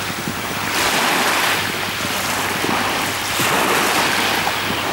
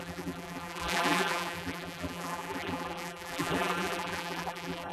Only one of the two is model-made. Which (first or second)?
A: second